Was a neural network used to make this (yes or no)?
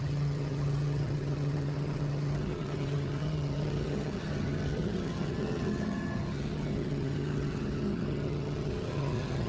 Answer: yes